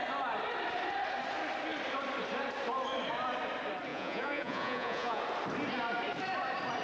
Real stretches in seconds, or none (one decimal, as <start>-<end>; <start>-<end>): 0.0-3.9; 5.2-6.8